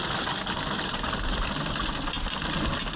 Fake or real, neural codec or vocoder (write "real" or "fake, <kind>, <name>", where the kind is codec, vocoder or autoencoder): real